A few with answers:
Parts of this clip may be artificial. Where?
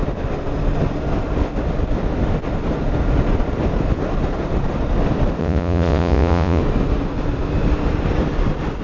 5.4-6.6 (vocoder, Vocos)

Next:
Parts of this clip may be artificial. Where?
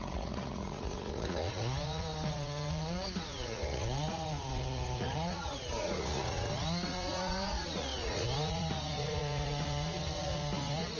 0.0-11.0 (vocoder, Vocos)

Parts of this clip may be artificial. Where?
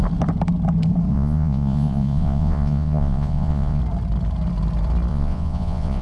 1.1-3.8 (vocoder, Vocos); 5.1-6.0